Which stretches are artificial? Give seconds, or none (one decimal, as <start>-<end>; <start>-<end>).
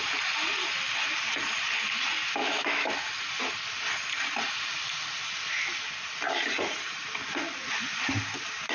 2.4-3.1